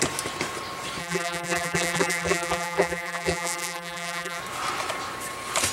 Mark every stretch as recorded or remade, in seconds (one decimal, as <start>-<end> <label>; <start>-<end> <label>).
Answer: 0.0-1.0 recorded; 1.0-4.4 remade; 4.4-5.7 recorded